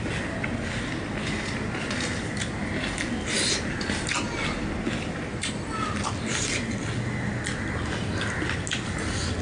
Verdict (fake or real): real